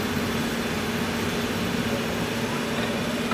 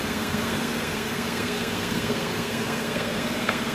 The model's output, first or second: second